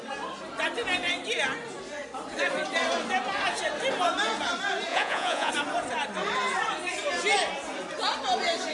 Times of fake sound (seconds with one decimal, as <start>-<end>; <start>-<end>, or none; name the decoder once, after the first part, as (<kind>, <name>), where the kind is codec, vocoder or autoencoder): 4.9-5.5 (vocoder, Vocos)